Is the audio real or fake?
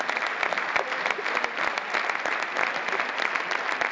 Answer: real